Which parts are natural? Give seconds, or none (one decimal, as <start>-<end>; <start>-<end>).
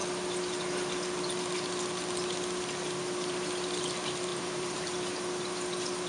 0.0-4.3; 4.9-6.1